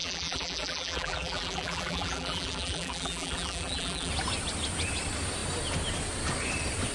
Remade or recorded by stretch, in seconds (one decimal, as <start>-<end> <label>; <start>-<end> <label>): 0.0-4.1 remade; 4.1-6.9 recorded